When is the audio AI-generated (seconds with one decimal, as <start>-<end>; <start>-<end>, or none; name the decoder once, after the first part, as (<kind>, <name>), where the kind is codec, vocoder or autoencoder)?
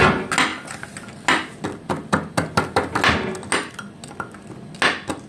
none